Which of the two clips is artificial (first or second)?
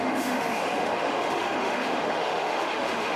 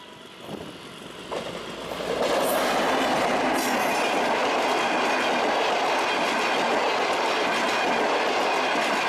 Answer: first